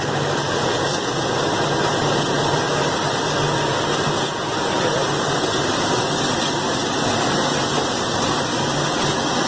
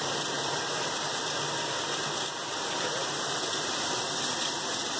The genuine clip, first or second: first